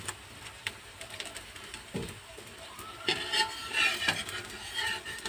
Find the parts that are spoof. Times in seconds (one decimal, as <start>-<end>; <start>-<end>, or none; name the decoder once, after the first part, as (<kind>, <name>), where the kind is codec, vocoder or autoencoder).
0.6-2.7 (vocoder, BigVGAN v2)